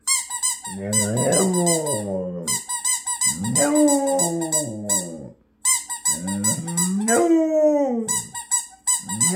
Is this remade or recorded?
recorded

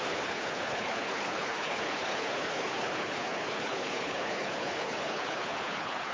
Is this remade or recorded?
remade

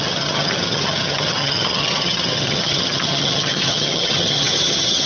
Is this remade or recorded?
remade